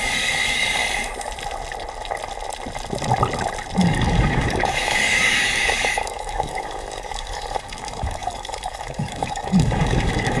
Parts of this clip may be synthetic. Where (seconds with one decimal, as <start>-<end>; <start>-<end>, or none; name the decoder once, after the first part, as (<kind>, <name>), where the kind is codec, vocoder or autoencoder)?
0.0-0.8 (codec, DAC); 3.8-10.4